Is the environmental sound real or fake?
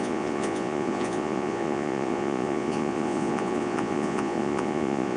fake